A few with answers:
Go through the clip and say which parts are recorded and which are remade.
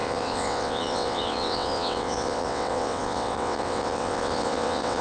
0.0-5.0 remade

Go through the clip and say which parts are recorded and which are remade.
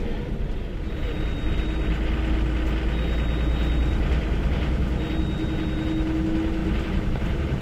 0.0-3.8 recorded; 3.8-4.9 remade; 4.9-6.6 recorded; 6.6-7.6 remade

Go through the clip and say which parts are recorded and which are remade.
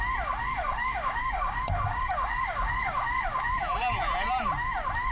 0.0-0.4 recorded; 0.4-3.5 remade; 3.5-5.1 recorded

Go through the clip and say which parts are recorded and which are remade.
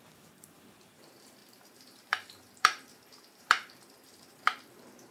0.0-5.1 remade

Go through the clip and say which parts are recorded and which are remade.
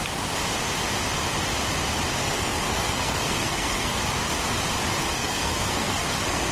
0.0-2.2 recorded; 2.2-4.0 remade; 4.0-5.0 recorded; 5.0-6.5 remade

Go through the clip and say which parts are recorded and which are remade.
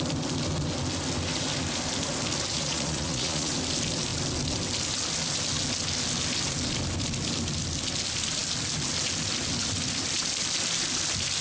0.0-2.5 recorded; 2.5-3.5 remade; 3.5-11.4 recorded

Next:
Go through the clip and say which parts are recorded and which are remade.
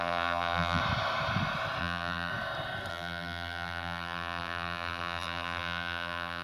0.0-0.8 remade; 0.8-1.8 recorded; 1.8-2.3 remade; 2.3-2.9 recorded; 2.9-6.4 remade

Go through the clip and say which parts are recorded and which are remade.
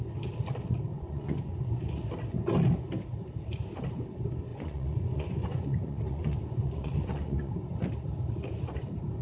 0.0-0.9 recorded; 0.9-1.9 remade; 1.9-4.5 recorded; 4.5-7.5 remade; 7.5-9.2 recorded